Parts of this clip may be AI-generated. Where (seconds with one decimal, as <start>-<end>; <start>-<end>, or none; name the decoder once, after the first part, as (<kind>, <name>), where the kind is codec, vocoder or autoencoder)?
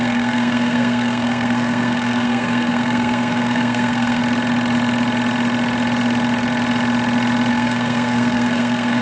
0.0-4.2 (codec, SNAC); 7.5-9.0